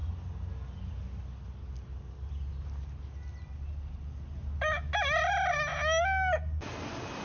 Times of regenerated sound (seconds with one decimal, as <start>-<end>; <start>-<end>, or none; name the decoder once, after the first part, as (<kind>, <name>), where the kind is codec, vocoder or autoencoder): none

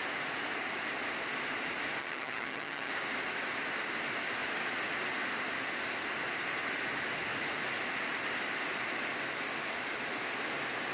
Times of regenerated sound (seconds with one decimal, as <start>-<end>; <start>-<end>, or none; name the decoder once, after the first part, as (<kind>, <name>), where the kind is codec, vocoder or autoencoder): 2.0-2.9 (vocoder, HiFi-GAN)

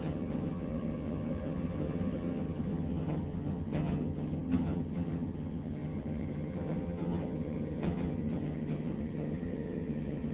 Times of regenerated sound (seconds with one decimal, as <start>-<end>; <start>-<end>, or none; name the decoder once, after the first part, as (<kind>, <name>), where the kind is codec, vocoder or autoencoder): 0.0-10.3 (vocoder, HiFi-GAN)

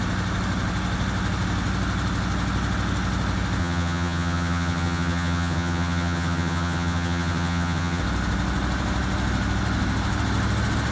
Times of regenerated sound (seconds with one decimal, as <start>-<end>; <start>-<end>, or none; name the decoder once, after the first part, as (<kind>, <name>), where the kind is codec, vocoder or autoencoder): 3.6-8.0 (vocoder, HiFi-GAN)